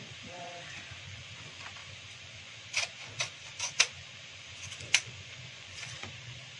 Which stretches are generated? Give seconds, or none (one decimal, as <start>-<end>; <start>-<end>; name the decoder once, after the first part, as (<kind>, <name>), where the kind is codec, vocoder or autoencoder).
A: 0.0-6.6 (vocoder, Vocos)